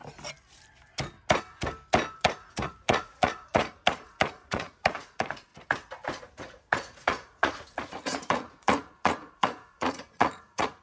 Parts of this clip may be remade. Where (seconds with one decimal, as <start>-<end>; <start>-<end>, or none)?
2.1-5.5; 6.2-10.8